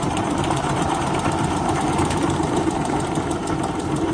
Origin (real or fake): fake